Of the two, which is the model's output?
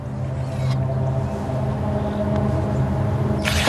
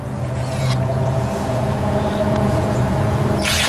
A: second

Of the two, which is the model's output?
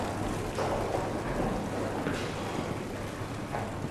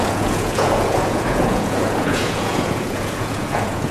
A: second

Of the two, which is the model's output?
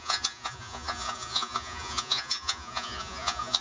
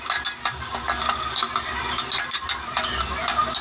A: first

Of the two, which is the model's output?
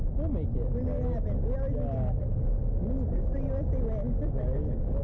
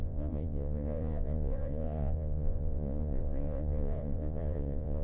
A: second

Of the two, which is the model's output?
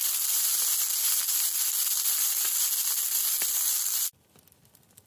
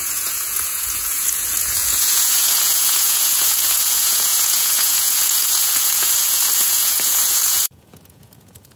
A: second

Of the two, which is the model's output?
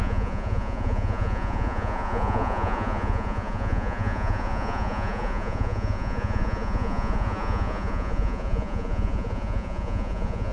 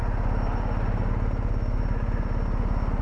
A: first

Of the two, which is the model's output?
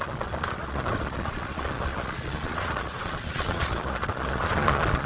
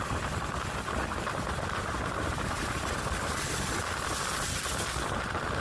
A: first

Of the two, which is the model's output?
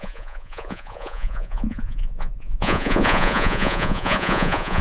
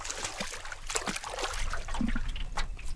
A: first